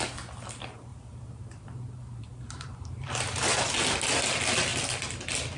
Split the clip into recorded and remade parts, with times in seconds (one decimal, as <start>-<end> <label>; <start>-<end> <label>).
0.0-0.9 recorded; 0.9-3.7 remade; 3.7-5.6 recorded

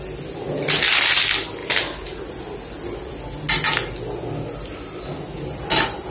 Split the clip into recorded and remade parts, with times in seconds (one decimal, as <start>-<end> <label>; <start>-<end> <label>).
0.0-1.6 recorded; 1.6-2.2 remade; 2.2-6.1 recorded

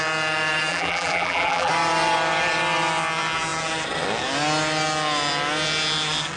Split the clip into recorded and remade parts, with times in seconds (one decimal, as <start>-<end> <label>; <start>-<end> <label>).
0.0-0.7 recorded; 0.7-1.7 remade; 1.7-6.4 recorded

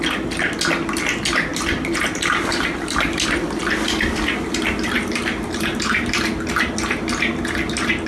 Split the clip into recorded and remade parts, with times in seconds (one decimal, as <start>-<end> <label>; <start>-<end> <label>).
0.0-8.1 recorded

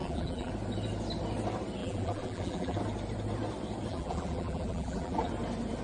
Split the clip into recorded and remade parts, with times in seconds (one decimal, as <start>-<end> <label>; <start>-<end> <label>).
0.0-0.5 remade; 0.5-1.8 recorded; 1.8-2.8 remade; 2.8-3.9 recorded; 3.9-5.3 remade; 5.3-5.8 recorded

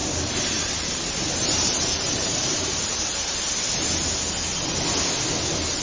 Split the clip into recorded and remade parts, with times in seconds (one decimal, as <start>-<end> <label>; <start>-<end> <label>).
0.0-3.5 remade; 3.5-5.8 recorded

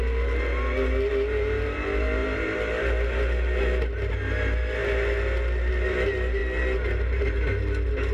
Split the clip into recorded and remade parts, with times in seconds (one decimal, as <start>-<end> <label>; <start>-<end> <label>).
0.0-8.1 recorded